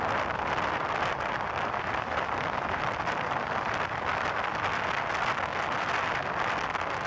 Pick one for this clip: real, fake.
real